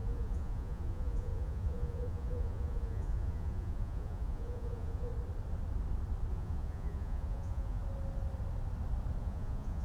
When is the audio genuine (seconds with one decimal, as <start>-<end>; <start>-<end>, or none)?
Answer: 5.1-6.3; 7.8-9.2